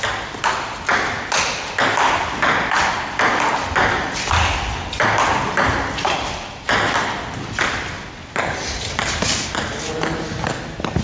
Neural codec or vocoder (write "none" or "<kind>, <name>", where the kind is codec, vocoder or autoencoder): none